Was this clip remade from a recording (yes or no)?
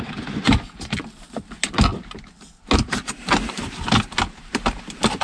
no